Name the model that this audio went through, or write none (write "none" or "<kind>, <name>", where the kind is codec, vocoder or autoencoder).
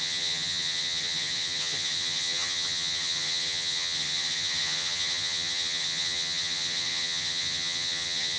vocoder, HiFi-GAN